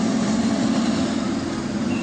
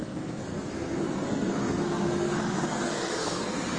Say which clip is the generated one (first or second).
second